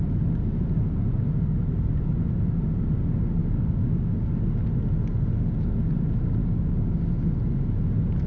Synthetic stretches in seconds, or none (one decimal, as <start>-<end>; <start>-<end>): 3.4-4.3; 6.4-7.0